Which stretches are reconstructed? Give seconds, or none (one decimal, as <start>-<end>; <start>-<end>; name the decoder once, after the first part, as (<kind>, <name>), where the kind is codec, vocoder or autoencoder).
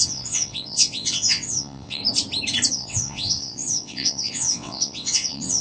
0.0-2.0 (vocoder, WaveNeXt); 2.7-5.6